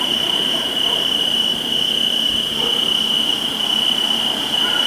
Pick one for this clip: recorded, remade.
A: remade